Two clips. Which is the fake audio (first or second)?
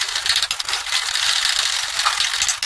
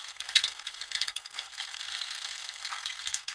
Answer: second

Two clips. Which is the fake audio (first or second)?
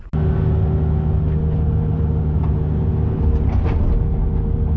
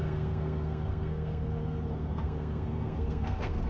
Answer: second